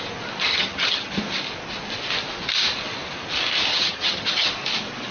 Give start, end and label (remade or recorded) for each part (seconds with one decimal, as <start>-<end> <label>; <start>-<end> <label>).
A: 0.0-0.5 recorded; 0.5-1.1 remade; 1.1-3.7 recorded; 3.7-4.5 remade; 4.5-5.1 recorded